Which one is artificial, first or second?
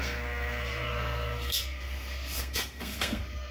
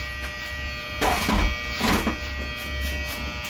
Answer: first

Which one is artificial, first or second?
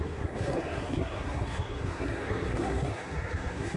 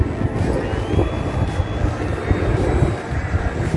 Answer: first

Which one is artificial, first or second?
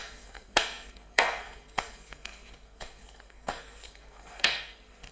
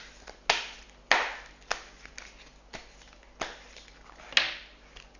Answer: first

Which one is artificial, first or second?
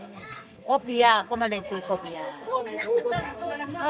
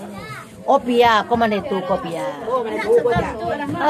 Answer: first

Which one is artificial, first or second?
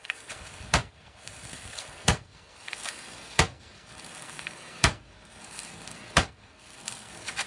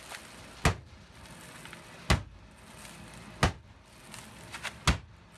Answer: first